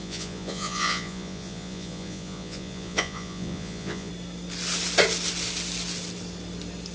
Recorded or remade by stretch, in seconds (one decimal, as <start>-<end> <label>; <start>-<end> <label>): 0.0-4.1 remade; 4.1-6.9 recorded